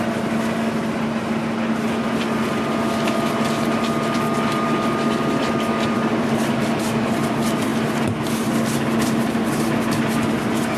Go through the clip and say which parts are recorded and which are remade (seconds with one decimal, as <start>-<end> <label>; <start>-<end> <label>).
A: 0.0-10.8 recorded